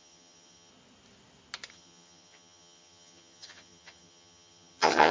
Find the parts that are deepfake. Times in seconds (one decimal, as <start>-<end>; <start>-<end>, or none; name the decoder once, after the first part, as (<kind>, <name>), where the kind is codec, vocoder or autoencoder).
0.0-0.7 (vocoder, HiFi-GAN); 1.7-5.1